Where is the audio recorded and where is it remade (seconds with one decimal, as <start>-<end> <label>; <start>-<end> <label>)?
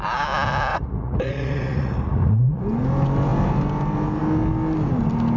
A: 0.0-0.7 recorded; 0.7-2.6 remade; 2.6-5.4 recorded